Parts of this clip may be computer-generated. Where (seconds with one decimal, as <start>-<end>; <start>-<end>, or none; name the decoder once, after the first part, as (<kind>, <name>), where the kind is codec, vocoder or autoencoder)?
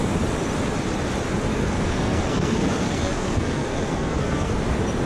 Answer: 1.5-4.6 (codec, SNAC)